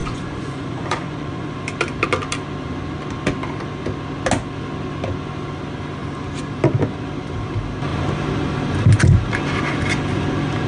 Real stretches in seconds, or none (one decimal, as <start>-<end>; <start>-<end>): 1.6-10.7